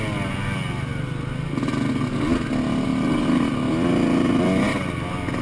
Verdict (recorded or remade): recorded